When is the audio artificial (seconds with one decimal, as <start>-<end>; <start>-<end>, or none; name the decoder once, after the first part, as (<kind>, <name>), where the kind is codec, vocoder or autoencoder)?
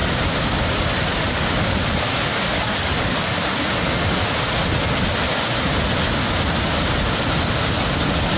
none